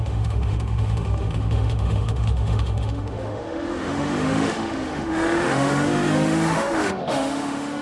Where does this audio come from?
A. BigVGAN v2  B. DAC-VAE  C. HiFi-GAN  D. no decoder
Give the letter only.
B